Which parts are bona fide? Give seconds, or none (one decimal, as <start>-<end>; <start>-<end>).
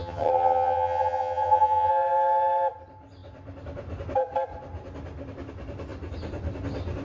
1.9-7.0